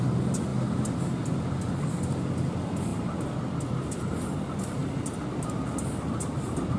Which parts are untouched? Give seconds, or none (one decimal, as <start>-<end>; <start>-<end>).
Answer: 0.5-1.2; 2.9-3.6; 4.8-6.8